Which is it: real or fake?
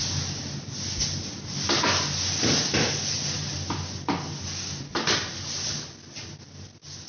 real